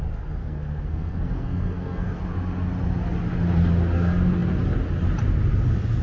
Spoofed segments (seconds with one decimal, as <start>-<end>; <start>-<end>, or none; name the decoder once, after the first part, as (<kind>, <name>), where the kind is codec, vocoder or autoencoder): 0.4-2.2 (codec, SNAC)